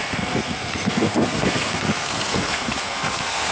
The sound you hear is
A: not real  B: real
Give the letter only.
A